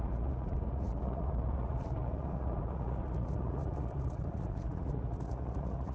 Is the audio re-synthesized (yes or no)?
yes